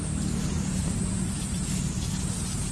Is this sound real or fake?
fake